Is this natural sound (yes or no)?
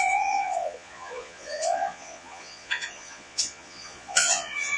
no